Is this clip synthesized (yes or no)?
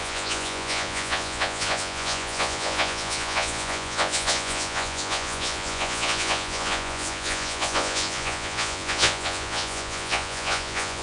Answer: yes